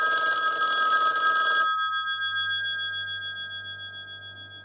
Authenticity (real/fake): real